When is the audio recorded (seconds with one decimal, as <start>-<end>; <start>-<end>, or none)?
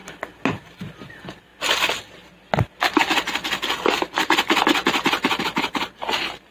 0.0-1.1; 1.5-5.4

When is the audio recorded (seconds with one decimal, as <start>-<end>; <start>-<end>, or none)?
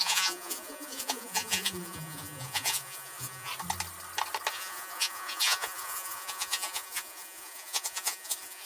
3.5-4.5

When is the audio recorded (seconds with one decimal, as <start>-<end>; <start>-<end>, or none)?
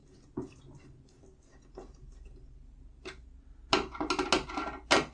0.0-5.1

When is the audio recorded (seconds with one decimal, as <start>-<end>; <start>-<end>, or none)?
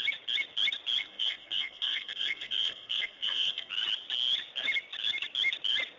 0.0-1.0; 3.7-6.0